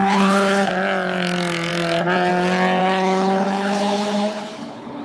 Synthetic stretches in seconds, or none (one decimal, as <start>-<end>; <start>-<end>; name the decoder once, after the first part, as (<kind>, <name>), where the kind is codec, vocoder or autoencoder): 0.0-0.7 (codec, HILCodec); 2.8-5.0